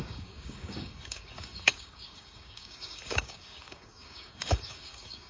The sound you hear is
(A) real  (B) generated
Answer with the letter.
B